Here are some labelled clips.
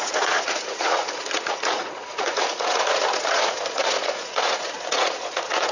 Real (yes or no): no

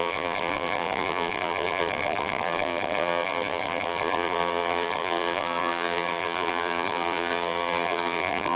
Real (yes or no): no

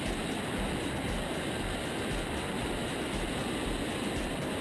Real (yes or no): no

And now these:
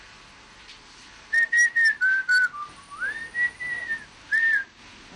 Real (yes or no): yes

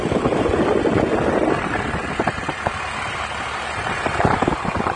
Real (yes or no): yes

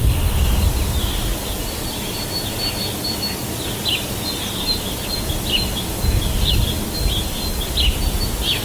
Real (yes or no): yes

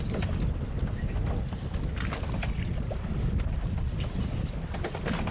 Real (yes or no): yes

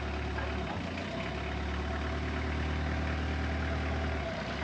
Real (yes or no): yes